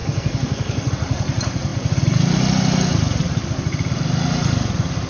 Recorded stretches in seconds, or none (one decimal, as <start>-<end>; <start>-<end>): 0.9-5.1